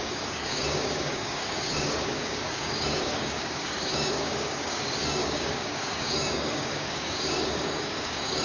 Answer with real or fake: fake